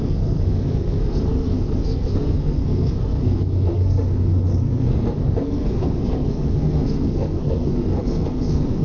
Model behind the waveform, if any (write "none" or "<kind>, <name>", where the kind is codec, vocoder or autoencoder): codec, SNAC